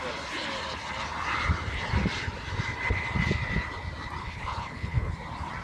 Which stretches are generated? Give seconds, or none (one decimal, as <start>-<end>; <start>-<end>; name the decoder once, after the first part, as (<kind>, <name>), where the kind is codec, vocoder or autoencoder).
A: 4.2-5.1 (codec, HILCodec)